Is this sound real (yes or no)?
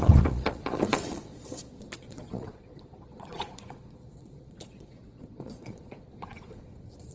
no